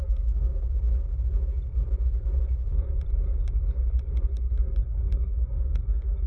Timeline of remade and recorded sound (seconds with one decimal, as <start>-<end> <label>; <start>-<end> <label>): 0.0-0.5 remade; 0.5-4.3 recorded; 4.3-6.3 remade